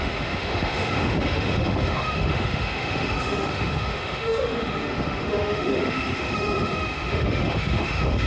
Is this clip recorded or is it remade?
remade